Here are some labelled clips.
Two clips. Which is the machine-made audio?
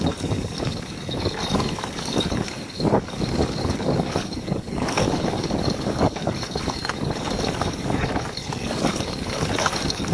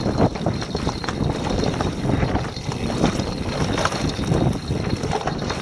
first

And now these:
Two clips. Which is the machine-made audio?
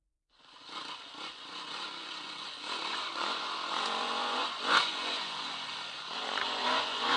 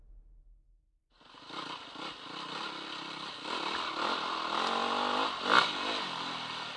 first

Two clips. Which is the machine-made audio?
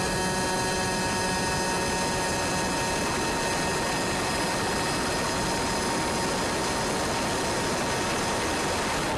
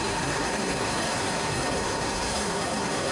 second